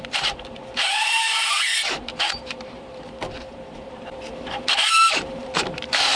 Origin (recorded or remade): remade